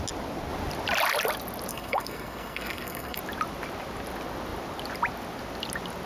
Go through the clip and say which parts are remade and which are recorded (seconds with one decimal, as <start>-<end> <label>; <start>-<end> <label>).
0.0-1.7 recorded; 1.7-3.2 remade; 3.2-6.1 recorded